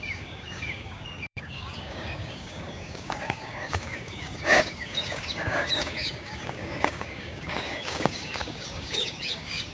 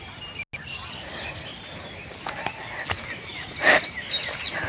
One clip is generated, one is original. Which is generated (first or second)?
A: first